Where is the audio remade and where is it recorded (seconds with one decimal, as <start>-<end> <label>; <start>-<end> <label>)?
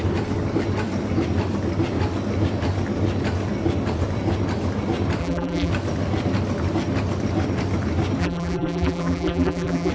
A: 0.0-5.2 recorded; 5.2-5.7 remade; 5.7-8.2 recorded; 8.2-9.9 remade